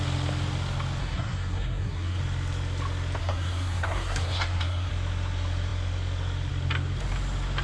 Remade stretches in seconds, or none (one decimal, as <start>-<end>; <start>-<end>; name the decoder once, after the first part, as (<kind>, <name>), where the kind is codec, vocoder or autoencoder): 1.0-2.2 (codec, SNAC); 3.2-4.9